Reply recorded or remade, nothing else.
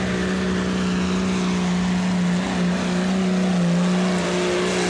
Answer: recorded